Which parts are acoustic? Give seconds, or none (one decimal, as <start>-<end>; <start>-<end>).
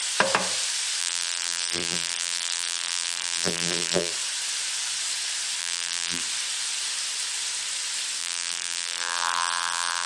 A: 0.0-1.0; 4.1-5.6; 6.2-8.2